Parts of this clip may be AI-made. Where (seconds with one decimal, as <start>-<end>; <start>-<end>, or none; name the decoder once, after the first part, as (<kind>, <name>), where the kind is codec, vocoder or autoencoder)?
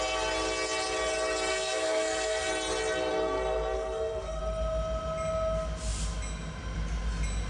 1.5-2.5 (codec, SNAC); 3.1-4.4